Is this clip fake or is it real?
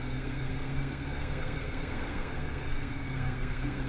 fake